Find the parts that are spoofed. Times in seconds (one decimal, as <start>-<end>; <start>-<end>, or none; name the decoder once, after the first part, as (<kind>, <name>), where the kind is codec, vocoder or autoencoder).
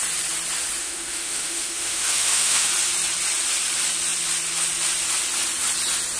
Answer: 0.8-2.7 (autoencoder, DAC-VAE)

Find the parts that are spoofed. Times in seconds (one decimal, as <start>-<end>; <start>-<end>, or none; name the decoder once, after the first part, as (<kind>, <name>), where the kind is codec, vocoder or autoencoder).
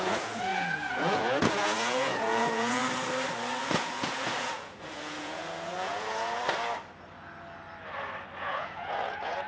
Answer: 0.0-2.8 (vocoder, Vocos); 3.6-6.4; 8.4-9.5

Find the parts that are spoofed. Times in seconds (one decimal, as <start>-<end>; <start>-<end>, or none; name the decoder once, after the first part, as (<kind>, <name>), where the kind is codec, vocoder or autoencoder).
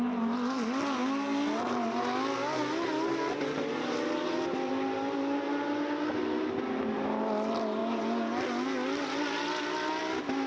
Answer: none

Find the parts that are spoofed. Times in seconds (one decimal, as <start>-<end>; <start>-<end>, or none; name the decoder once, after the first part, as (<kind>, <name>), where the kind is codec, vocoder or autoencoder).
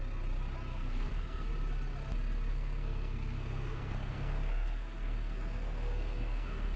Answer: 0.7-1.5 (codec, SNAC); 2.5-6.8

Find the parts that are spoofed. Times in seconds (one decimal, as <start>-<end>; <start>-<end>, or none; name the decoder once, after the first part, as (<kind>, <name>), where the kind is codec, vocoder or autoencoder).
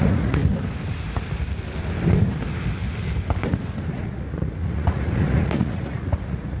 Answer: 0.0-0.4 (vocoder, Vocos); 3.9-6.6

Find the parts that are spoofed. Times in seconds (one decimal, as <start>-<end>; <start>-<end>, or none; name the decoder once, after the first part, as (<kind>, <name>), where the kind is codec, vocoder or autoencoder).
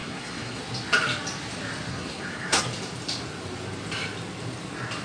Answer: 0.0-0.6 (codec, SNAC); 1.9-2.6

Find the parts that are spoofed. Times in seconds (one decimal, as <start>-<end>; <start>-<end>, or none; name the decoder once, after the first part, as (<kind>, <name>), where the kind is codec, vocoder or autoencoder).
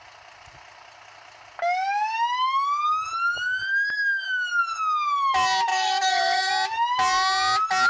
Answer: 3.7-4.6 (autoencoder, DAC-VAE); 5.7-6.5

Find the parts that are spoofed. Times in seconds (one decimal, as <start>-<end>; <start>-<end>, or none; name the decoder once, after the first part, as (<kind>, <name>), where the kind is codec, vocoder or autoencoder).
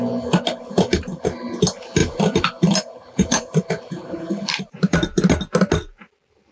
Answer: 2.0-5.3 (vocoder, BigVGAN v2)